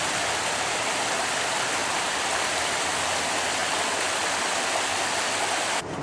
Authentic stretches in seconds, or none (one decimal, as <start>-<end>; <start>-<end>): 0.0-1.8; 2.4-3.6; 4.3-6.0